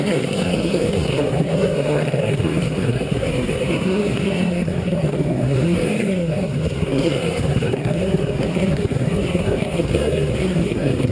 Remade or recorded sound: remade